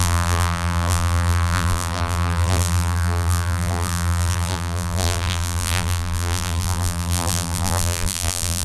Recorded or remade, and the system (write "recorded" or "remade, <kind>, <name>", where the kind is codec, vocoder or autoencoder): remade, vocoder, BigVGAN v2